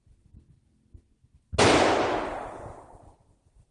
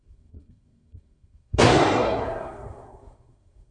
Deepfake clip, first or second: second